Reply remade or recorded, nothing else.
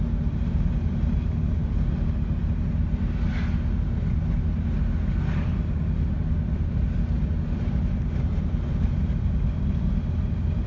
recorded